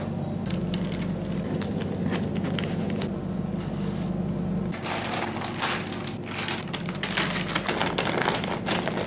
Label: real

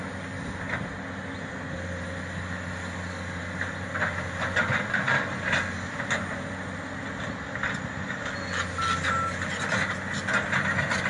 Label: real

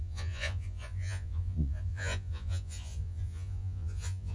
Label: fake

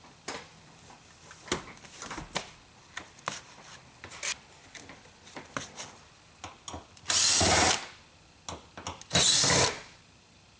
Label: real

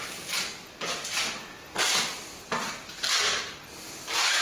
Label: real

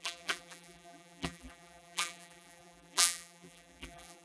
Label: fake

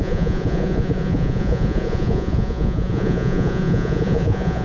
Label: fake